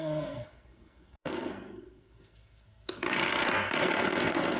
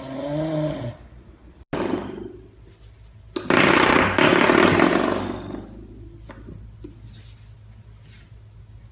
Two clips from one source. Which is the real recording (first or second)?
second